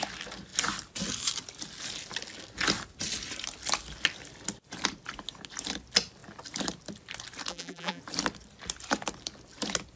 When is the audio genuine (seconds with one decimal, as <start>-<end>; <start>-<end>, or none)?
0.0-7.5; 8.0-10.0